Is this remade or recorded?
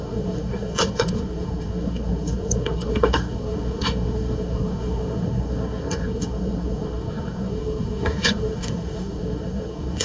remade